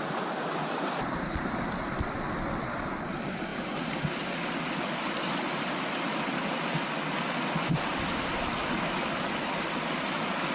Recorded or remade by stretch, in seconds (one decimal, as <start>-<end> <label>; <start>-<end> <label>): 0.0-0.6 recorded; 0.6-1.6 remade; 1.6-10.5 recorded